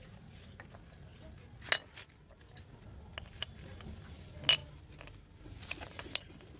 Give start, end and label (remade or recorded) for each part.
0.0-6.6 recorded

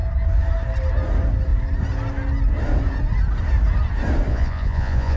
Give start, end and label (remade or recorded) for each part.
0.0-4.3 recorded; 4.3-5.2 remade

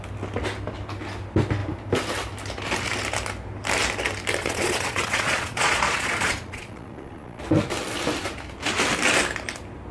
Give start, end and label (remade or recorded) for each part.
0.0-4.4 recorded; 4.4-7.4 remade; 7.4-9.9 recorded

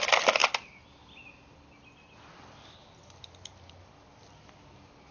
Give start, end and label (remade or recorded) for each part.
0.0-5.1 recorded

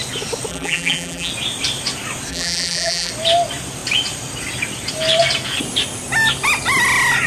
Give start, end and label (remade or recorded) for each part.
0.0-0.5 recorded; 0.5-1.3 remade; 1.3-2.3 recorded; 2.3-3.1 remade; 3.1-7.3 recorded